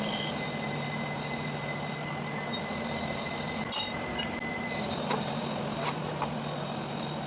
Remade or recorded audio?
recorded